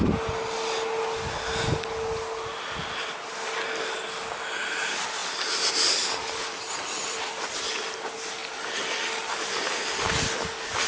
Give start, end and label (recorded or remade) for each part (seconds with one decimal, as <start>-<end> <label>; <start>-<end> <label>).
0.0-10.9 recorded